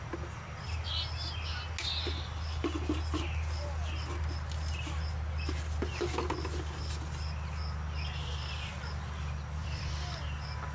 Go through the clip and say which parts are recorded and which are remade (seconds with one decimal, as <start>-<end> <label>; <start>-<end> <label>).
0.0-9.6 recorded; 9.6-10.2 remade; 10.2-10.7 recorded